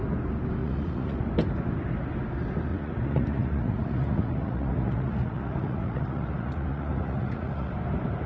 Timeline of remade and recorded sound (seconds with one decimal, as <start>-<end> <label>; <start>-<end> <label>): 0.0-0.6 recorded; 0.6-1.2 remade; 1.2-2.7 recorded; 2.7-7.7 remade; 7.7-8.3 recorded